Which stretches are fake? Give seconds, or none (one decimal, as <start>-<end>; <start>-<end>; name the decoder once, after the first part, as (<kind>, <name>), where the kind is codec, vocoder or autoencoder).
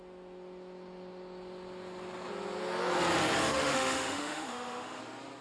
3.5-5.0 (autoencoder, DAC-VAE)